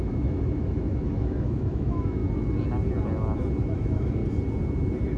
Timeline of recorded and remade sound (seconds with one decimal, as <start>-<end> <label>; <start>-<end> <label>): 0.0-2.2 remade; 2.2-3.6 recorded; 3.6-4.2 remade; 4.2-5.2 recorded